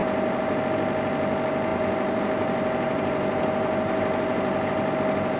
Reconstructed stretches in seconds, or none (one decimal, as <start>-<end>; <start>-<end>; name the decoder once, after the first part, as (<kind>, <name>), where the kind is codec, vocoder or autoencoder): 0.0-0.6 (vocoder, BigVGAN v2); 1.7-4.9